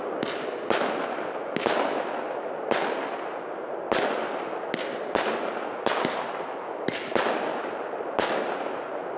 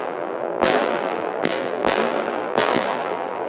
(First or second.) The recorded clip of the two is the first